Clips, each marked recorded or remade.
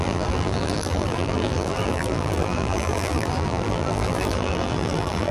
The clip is remade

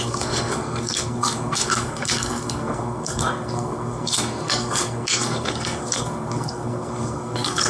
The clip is remade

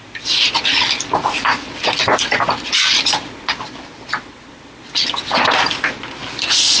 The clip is recorded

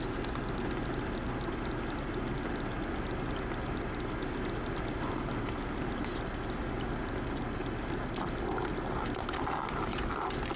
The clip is recorded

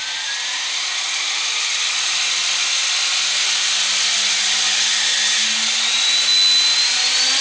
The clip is recorded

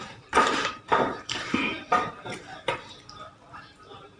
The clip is remade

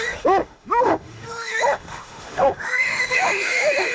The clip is remade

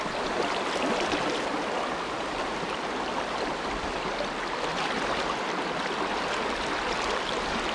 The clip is recorded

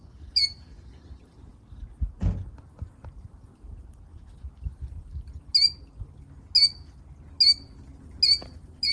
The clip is recorded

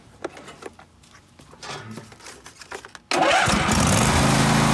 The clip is recorded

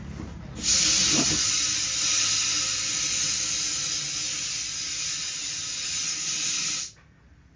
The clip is recorded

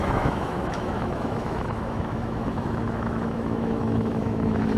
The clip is remade